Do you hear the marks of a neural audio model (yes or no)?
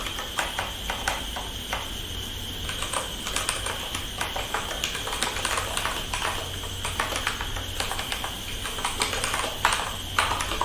yes